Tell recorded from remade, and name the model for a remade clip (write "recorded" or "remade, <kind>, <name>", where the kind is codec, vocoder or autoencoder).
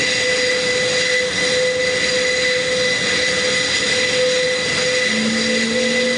recorded